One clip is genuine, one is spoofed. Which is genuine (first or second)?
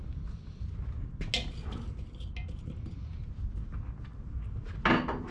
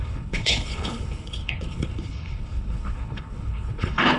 first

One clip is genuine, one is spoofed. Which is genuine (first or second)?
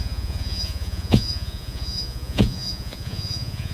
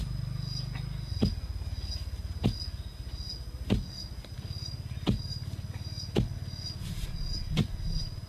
second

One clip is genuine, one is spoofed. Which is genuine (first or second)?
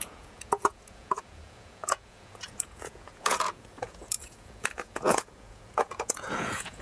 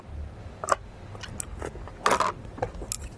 second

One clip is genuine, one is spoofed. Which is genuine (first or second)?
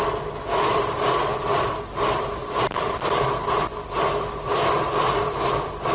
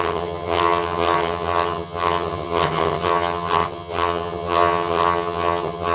first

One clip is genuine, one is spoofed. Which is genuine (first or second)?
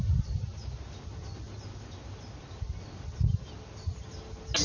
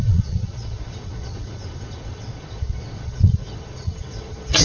first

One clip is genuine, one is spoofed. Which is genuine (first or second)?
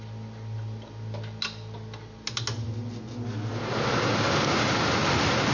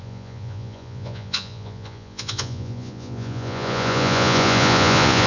first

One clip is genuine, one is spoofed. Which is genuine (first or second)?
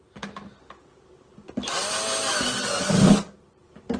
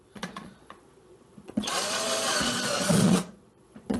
first